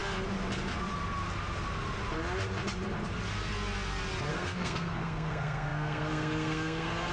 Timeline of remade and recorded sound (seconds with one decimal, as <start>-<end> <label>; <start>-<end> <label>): 0.0-4.3 recorded; 4.3-7.1 remade